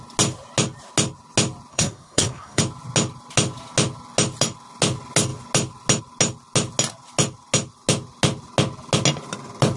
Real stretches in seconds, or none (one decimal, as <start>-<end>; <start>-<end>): 0.0-1.7; 2.6-9.8

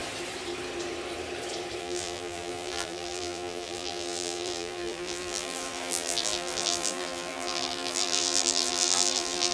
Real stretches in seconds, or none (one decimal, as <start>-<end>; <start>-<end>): 0.0-1.8

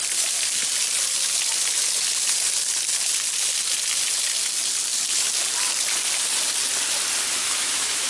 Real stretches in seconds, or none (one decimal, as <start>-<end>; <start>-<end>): 0.0-7.4

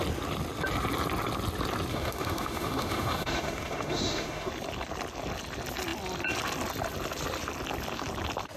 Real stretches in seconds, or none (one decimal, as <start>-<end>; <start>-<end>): 0.0-1.9; 4.5-8.6

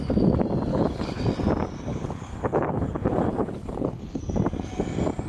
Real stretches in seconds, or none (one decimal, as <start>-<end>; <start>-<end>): 0.0-0.7; 1.2-1.9; 4.2-5.3

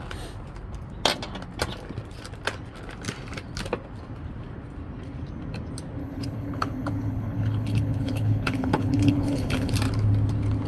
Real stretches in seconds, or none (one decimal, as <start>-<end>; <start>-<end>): 0.0-6.0; 9.7-10.7

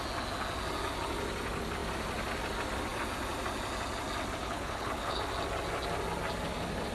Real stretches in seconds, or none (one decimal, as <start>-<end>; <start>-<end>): 0.0-4.4; 5.2-6.9